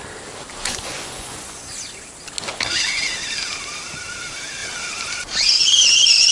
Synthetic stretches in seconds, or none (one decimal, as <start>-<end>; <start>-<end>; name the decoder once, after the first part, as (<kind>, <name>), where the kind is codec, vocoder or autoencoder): 0.6-1.7 (vocoder, Vocos)